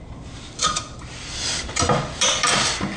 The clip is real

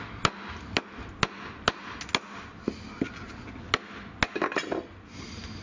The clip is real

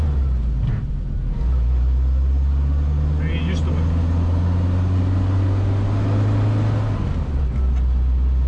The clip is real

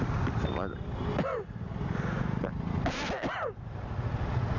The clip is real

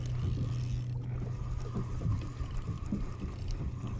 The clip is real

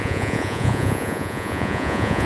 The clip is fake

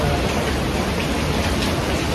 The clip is real